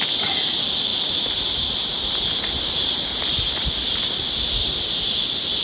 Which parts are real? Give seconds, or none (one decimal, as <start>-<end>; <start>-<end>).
0.0-5.6